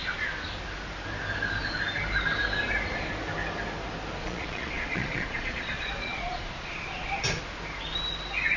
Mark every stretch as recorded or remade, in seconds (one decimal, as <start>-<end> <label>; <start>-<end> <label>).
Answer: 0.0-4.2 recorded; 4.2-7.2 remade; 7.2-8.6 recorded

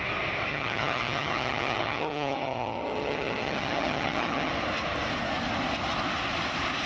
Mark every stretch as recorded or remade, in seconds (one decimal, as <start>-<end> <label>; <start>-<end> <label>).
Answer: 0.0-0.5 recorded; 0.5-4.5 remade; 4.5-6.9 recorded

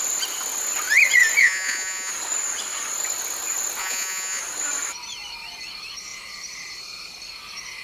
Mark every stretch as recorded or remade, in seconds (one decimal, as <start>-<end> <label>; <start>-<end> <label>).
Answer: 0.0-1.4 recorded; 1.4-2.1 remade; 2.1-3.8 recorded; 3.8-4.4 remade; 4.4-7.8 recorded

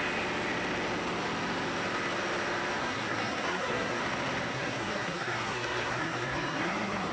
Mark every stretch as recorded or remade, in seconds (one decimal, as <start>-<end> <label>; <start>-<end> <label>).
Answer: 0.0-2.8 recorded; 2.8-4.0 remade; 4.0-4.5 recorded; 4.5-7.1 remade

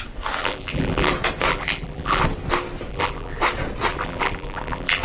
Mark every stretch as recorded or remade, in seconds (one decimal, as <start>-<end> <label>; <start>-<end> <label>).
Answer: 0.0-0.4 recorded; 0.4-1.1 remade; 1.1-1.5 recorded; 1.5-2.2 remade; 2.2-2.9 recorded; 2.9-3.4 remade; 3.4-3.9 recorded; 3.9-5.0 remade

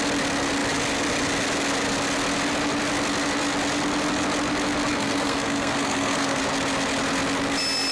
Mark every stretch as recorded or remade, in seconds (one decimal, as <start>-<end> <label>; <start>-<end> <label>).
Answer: 0.0-4.9 recorded; 4.9-6.4 remade; 6.4-7.9 recorded